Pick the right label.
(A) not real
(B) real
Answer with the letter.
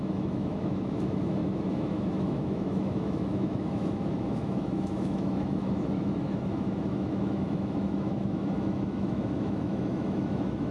A